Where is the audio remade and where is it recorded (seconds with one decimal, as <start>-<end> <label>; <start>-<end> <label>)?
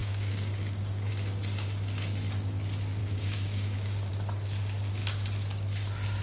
0.0-1.1 remade; 1.1-3.0 recorded; 3.0-4.1 remade; 4.1-6.2 recorded